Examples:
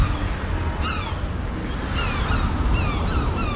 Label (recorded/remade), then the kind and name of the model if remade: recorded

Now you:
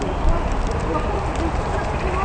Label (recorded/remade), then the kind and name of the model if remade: recorded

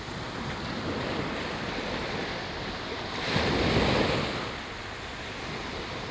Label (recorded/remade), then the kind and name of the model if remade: recorded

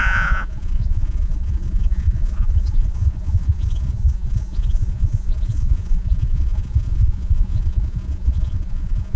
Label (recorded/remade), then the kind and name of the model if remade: remade, vocoder, Vocos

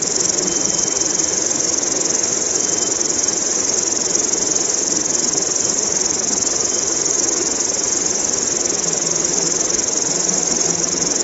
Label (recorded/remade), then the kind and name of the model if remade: recorded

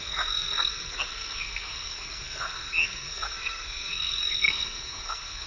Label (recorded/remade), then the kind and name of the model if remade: remade, codec, SNAC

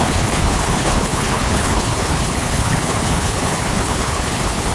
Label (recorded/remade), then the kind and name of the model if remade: remade, codec, HILCodec